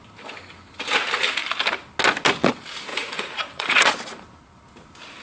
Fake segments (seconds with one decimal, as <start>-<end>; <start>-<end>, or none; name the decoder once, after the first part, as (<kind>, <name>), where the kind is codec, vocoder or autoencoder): 2.9-3.9 (vocoder, Vocos)